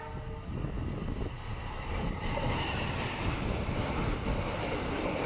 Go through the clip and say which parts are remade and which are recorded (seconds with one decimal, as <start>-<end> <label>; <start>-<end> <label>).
0.0-1.5 recorded; 1.5-4.7 remade; 4.7-5.3 recorded